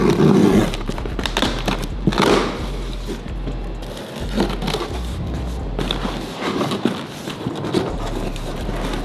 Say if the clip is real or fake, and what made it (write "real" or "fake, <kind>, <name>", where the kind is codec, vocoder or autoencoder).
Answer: real